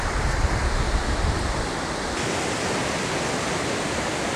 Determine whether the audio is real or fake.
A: real